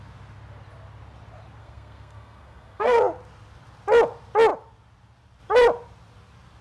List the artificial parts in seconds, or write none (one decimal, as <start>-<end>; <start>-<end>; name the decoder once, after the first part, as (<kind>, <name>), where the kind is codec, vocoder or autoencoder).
1.6-3.0 (codec, SNAC)